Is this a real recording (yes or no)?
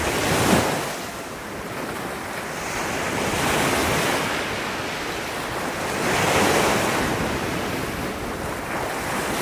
yes